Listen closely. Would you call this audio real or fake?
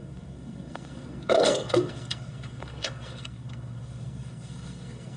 fake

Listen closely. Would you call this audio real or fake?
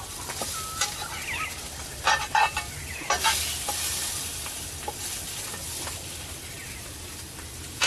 real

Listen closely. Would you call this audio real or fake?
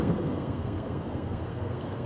fake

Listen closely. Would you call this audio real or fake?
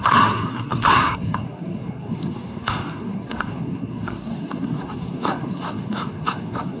fake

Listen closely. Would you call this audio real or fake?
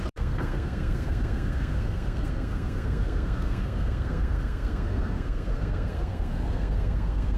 fake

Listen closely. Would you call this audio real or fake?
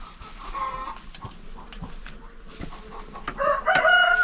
real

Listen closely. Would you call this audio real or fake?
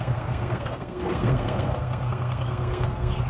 fake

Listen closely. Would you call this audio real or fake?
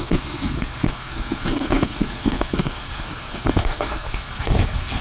fake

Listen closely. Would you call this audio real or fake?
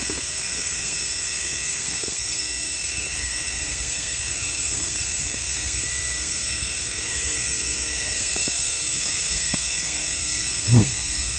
fake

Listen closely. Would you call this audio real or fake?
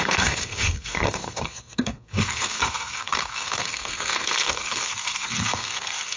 fake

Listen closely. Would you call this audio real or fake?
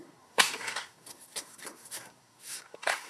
fake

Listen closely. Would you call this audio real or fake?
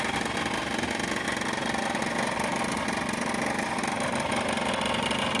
real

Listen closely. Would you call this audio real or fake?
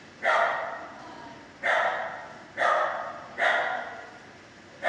real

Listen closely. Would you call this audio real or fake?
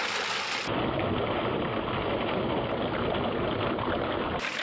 real